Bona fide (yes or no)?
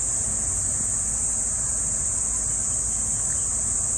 yes